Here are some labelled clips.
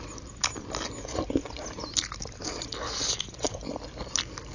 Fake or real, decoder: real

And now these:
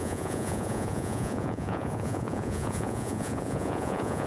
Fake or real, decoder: fake, vocoder, Vocos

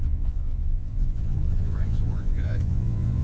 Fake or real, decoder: fake, vocoder, Vocos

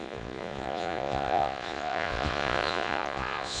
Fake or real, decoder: fake, vocoder, Vocos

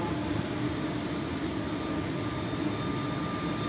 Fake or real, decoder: real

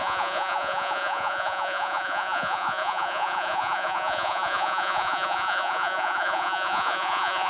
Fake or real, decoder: fake, vocoder, Vocos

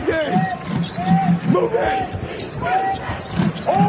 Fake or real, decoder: real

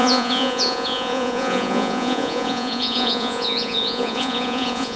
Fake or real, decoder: fake, vocoder, Vocos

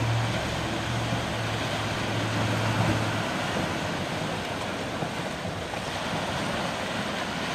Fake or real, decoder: real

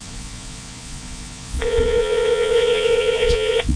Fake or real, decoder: fake, vocoder, Vocos